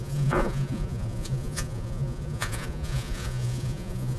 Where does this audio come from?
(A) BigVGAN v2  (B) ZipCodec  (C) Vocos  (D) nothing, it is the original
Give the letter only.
C